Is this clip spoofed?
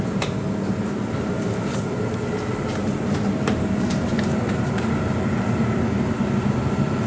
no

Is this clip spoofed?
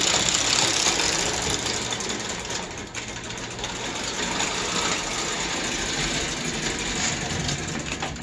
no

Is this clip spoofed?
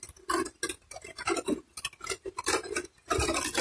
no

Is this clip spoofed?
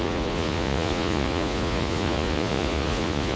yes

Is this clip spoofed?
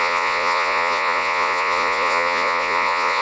yes